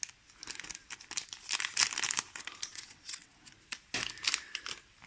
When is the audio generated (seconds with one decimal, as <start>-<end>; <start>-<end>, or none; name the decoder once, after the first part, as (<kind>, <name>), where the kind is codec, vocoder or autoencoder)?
2.7-3.3 (vocoder, WaveNeXt)